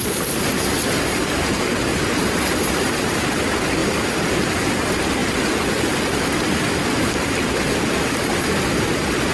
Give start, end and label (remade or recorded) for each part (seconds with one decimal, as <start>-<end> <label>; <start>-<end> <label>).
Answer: 0.0-1.9 recorded; 1.9-3.2 remade; 3.2-9.3 recorded